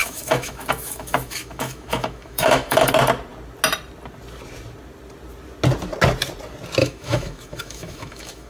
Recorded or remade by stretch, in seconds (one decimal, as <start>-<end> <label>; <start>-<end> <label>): 0.0-2.9 remade; 2.9-6.8 recorded; 6.8-8.5 remade

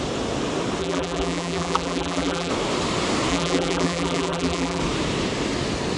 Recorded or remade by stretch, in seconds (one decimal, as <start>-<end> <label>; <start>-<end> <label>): 0.0-0.8 recorded; 0.8-2.5 remade; 2.5-3.3 recorded; 3.3-4.8 remade; 4.8-6.0 recorded

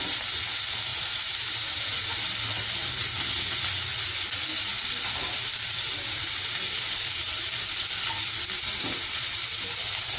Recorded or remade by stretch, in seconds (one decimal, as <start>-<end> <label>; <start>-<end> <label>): 0.0-0.9 recorded; 0.9-3.8 remade; 3.8-4.5 recorded; 4.5-8.6 remade; 8.6-10.2 recorded

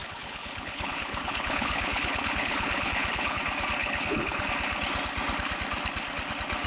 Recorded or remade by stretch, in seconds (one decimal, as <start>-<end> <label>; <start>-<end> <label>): 0.0-3.4 remade; 3.4-3.8 recorded; 3.8-4.4 remade; 4.4-6.7 recorded

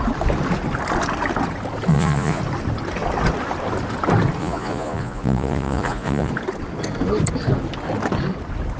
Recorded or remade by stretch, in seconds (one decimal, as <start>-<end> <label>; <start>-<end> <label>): 0.0-1.9 recorded; 1.9-2.4 remade; 2.4-4.4 recorded; 4.4-6.3 remade; 6.3-8.8 recorded

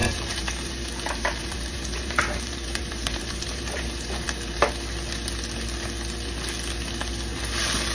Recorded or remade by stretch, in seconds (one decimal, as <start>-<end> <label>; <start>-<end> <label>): 0.0-4.7 remade; 4.7-7.9 recorded

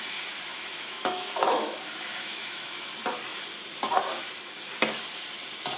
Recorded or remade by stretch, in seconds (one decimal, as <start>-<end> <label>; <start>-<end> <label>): 0.0-0.5 recorded; 0.5-2.9 remade; 2.9-5.8 recorded

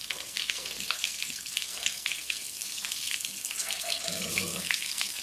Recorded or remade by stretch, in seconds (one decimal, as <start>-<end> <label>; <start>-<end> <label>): 0.0-5.2 remade